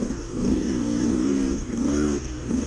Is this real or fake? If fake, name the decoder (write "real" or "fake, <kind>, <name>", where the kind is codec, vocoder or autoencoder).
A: fake, codec, DAC